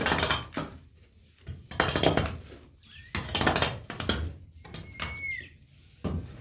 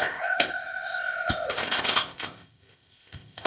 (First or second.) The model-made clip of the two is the second